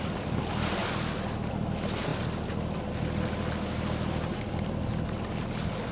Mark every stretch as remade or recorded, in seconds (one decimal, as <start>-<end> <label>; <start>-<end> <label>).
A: 0.0-5.9 recorded